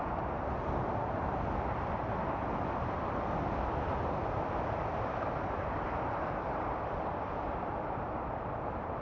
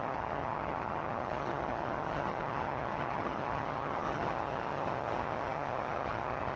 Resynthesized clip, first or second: second